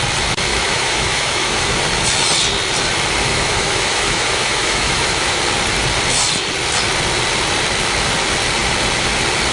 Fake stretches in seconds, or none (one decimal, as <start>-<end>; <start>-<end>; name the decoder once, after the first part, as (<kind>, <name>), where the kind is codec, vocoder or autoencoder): 0.5-1.8 (autoencoder, DAC-VAE); 3.3-5.4